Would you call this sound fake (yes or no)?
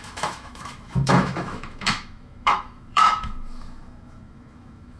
yes